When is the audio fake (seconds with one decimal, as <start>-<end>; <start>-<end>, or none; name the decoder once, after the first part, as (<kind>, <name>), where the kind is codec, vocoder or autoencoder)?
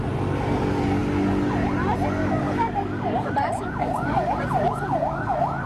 2.2-5.7 (codec, DAC)